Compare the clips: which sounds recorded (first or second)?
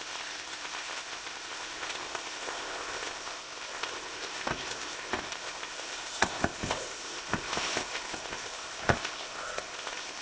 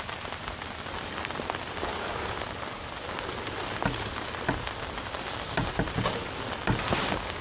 second